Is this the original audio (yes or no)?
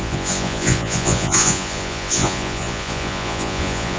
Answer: no